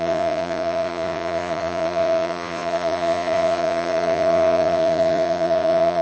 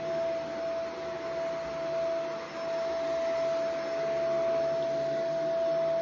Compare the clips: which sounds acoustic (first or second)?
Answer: second